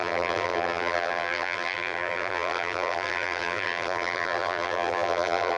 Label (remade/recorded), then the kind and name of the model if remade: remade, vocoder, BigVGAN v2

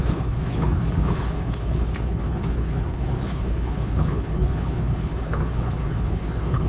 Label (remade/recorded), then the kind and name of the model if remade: remade, codec, HILCodec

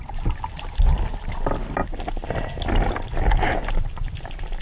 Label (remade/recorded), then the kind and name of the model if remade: recorded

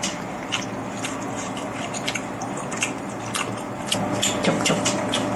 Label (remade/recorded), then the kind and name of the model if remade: recorded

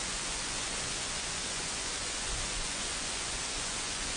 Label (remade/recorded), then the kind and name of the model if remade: remade, vocoder, Vocos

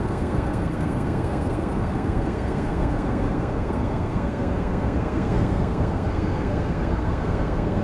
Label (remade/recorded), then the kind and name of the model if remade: remade, codec, SNAC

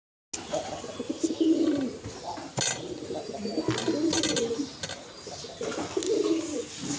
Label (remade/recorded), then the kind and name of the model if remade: recorded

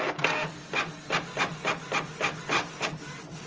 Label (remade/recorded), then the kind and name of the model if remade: recorded